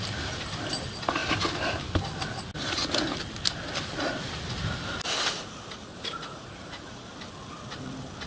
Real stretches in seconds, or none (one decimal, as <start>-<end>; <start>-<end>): 0.0-5.9; 7.1-8.3